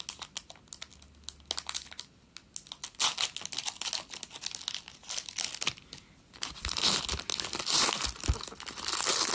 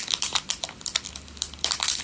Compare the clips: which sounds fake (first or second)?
second